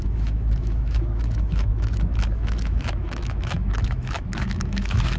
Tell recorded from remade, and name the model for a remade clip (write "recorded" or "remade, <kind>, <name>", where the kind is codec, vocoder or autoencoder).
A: remade, autoencoder, DAC-VAE